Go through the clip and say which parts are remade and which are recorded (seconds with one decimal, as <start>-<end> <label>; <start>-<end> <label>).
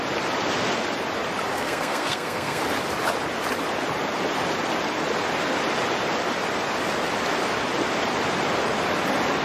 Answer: 0.0-1.5 recorded; 1.5-2.6 remade; 2.6-9.4 recorded